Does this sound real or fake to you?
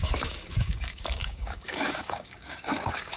fake